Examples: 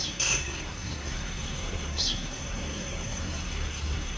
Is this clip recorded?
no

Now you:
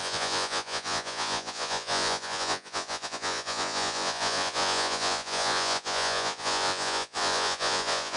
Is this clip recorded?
no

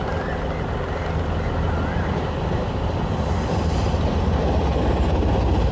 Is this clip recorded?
yes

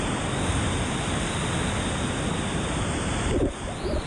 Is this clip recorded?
yes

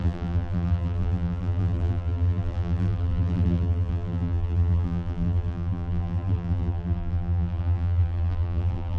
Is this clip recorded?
no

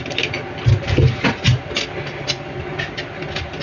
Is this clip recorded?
yes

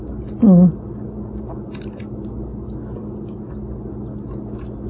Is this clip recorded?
yes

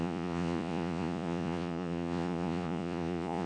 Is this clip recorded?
no